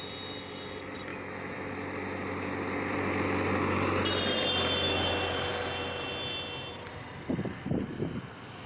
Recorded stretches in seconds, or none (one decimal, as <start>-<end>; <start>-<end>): 0.0-1.1; 1.7-8.7